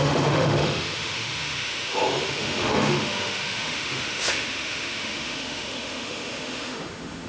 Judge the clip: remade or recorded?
remade